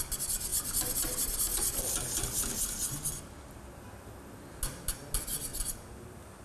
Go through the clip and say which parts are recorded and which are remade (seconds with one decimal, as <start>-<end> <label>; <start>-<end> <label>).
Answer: 0.0-5.5 recorded; 5.5-6.4 remade